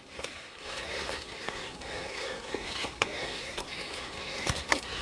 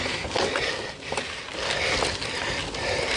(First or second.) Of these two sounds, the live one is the second